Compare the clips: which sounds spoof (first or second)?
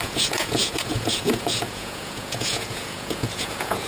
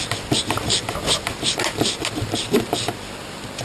first